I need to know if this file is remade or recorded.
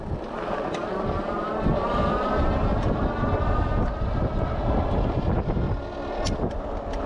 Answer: recorded